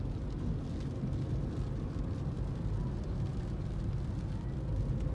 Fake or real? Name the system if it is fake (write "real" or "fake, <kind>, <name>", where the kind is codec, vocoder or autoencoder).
real